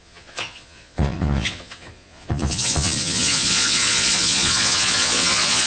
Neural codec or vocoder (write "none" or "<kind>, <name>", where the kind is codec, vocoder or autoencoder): vocoder, Vocos